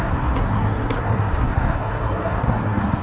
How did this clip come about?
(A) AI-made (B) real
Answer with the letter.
A